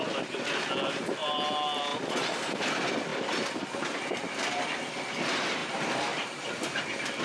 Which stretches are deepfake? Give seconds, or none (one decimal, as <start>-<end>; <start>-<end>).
none